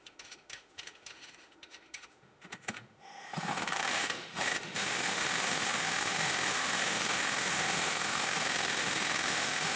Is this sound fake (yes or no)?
yes